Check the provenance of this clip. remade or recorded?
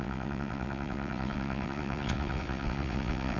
remade